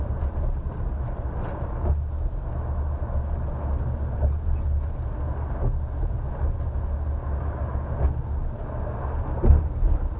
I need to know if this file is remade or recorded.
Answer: recorded